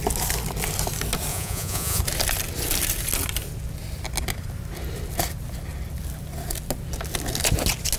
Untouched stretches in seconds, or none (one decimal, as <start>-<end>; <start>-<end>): 0.0-1.3; 2.0-8.0